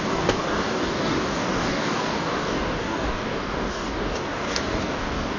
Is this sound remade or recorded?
remade